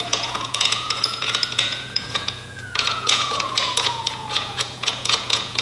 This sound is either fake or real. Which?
fake